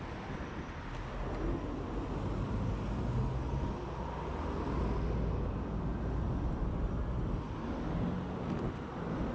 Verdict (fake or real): real